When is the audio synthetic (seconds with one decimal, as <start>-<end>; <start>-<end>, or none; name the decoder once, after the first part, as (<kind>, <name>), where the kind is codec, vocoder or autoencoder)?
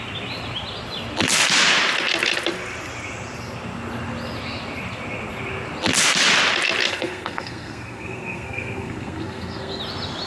6.9-9.8 (codec, SNAC)